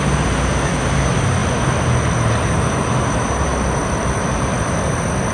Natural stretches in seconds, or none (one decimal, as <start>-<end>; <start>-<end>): 1.4-2.4; 3.5-4.0; 4.5-5.3